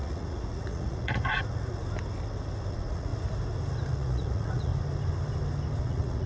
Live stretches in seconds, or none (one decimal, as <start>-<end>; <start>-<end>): 1.8-2.7; 3.1-3.9; 4.7-5.8